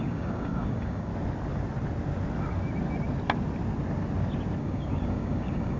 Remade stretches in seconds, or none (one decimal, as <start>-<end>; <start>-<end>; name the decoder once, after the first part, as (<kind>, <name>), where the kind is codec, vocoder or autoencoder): 0.0-1.1 (codec, DAC); 4.6-5.8